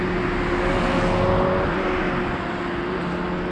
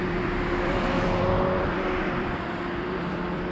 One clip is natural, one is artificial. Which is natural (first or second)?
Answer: first